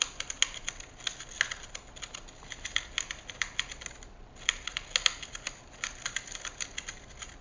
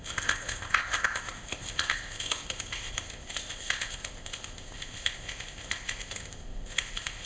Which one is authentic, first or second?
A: first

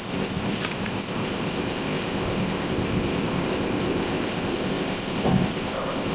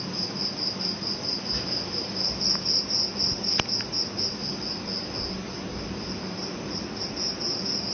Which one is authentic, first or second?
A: second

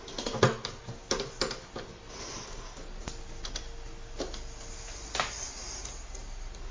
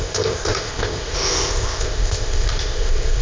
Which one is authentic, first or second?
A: first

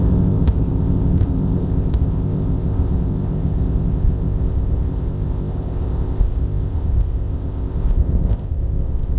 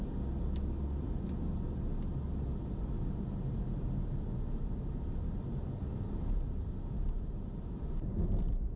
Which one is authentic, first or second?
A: second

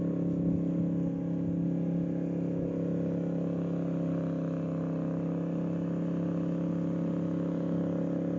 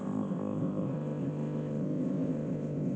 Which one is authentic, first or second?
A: first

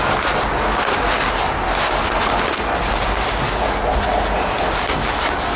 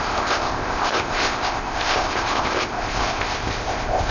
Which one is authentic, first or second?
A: first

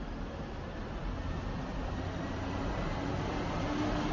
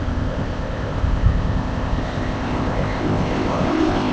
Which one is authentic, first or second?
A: first